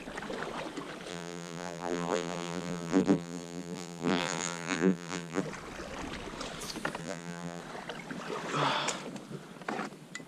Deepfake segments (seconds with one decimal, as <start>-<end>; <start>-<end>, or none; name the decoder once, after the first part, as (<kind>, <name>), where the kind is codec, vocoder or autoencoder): 1.1-5.4 (vocoder, BigVGAN v2); 7.0-7.6